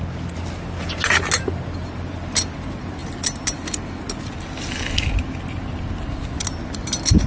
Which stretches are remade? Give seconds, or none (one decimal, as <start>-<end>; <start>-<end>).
none